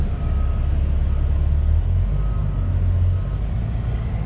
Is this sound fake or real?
real